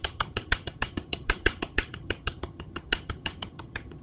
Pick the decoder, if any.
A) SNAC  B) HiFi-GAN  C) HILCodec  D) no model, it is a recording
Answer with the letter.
B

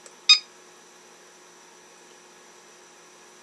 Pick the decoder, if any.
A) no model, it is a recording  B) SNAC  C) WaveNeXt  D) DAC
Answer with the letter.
A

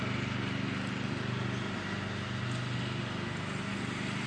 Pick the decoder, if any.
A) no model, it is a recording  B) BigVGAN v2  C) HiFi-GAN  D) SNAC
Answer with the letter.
A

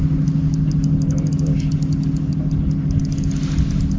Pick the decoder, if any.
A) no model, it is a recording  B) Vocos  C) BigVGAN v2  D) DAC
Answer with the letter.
A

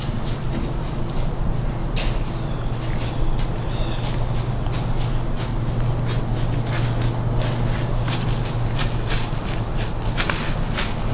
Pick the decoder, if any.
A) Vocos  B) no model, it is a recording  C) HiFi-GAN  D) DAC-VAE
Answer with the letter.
B